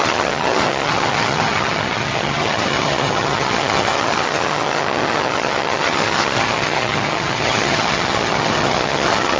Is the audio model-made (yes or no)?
yes